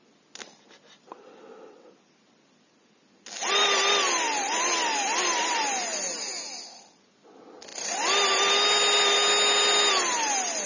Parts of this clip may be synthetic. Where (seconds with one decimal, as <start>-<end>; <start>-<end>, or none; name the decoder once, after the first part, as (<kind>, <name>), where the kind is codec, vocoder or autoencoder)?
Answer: none